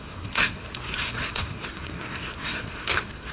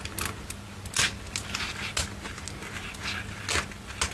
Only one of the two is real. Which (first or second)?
second